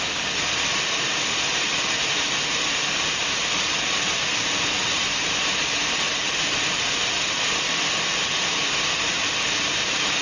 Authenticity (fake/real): fake